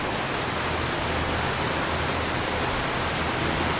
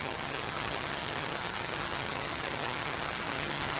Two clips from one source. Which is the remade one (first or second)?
second